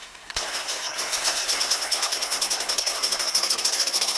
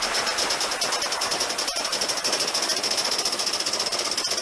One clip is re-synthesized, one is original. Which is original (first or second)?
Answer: second